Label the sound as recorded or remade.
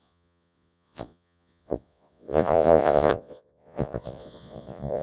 remade